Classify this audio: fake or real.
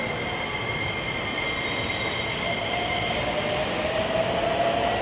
real